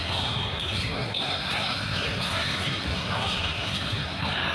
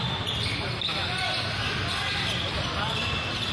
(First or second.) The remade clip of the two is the first